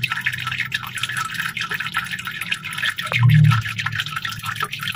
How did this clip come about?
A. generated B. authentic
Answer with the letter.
B